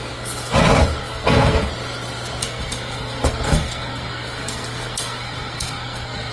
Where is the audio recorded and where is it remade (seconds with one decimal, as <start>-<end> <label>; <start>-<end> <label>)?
0.0-1.0 recorded; 1.0-1.7 remade; 1.7-2.4 recorded; 2.4-6.3 remade